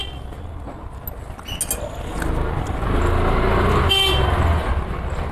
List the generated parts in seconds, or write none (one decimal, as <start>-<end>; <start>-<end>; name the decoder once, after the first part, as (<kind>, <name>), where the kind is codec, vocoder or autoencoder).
none